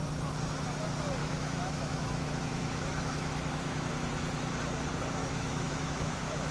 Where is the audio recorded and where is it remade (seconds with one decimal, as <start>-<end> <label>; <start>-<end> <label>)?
0.0-1.2 recorded; 1.2-3.9 remade; 3.9-5.2 recorded; 5.2-6.5 remade